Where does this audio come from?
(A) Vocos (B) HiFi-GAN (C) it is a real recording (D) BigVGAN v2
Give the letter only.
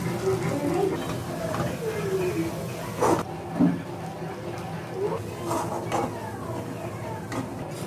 C